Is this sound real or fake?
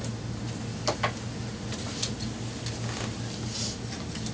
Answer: real